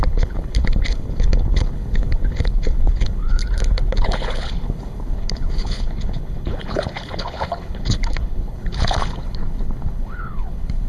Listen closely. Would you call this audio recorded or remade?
remade